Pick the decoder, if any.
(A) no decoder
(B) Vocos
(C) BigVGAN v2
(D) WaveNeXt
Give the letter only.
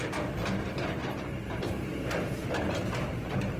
C